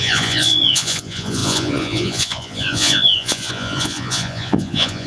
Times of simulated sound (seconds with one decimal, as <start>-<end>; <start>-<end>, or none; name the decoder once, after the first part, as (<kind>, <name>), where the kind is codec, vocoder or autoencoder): 0.0-5.1 (vocoder, Vocos)